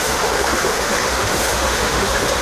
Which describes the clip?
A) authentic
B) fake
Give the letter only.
B